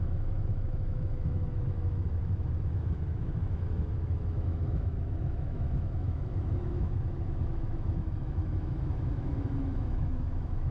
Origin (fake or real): fake